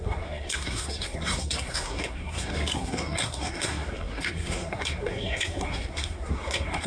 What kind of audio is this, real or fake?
fake